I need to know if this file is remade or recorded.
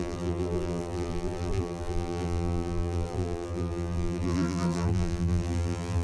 remade